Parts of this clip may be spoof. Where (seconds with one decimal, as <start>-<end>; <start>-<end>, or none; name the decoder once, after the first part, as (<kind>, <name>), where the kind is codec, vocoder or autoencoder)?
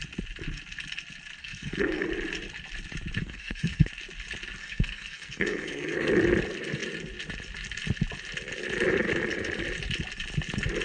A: 1.4-2.0 (codec, SNAC); 3.2-3.9; 4.6-6.1